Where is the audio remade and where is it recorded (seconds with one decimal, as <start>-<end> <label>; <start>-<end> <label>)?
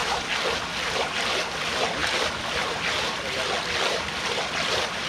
0.0-5.1 recorded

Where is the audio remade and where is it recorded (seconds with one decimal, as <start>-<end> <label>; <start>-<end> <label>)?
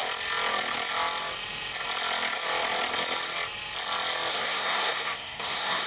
0.0-4.3 recorded; 4.3-5.9 remade